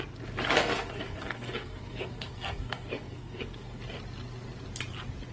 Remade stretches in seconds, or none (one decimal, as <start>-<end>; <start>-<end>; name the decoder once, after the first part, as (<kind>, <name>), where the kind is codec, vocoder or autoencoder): 0.6-3.8 (codec, SNAC)